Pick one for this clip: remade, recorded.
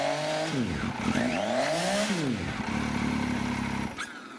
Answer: recorded